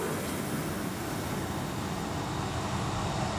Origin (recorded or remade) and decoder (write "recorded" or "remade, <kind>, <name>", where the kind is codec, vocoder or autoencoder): recorded